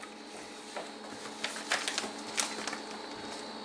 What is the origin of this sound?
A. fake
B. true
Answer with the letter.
B